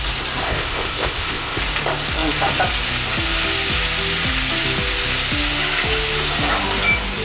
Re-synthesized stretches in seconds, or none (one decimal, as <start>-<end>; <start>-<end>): 0.4-1.6